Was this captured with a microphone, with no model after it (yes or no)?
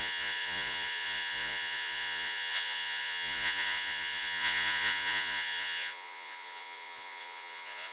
no